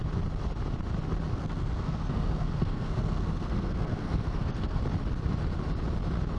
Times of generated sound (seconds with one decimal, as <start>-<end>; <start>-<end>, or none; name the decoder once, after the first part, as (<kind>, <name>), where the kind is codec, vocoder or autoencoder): 1.3-4.8 (codec, SNAC)